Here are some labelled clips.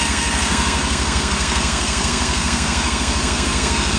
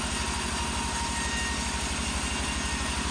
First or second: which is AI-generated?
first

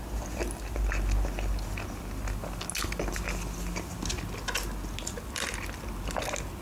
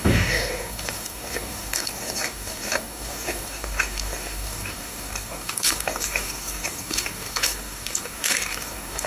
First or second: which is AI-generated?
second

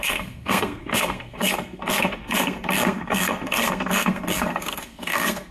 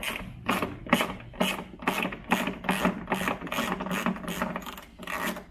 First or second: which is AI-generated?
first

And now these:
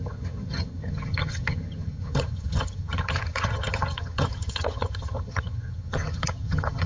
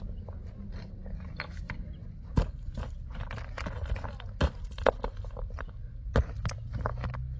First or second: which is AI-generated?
first